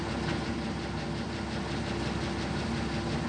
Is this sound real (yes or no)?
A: yes